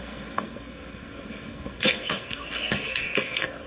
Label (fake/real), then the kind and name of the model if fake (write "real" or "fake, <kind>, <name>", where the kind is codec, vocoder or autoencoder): fake, codec, SNAC